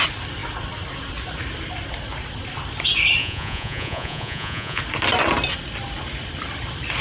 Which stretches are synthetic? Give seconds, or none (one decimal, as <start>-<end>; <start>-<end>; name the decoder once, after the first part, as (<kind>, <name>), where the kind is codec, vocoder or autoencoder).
3.2-4.8 (vocoder, Vocos)